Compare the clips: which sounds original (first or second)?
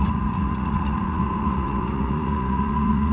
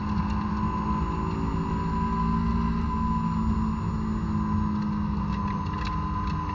second